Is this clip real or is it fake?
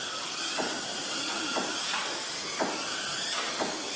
real